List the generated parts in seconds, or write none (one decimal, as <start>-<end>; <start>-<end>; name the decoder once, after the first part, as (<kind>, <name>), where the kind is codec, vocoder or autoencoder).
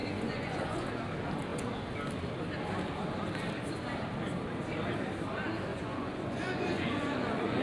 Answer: 0.0-0.9 (vocoder, Vocos); 5.7-7.6